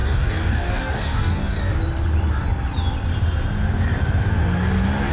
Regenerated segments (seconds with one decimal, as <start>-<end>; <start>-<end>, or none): 0.0-1.6